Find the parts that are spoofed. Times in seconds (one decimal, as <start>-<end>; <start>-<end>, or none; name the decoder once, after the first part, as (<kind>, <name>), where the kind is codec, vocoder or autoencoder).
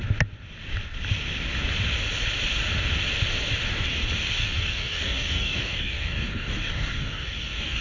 4.4-7.8 (codec, DAC)